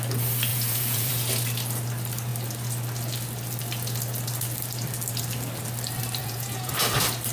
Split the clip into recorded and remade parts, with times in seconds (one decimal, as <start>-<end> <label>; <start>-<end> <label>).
0.0-0.5 recorded; 0.5-1.1 remade; 1.1-6.2 recorded; 6.2-6.7 remade; 6.7-7.3 recorded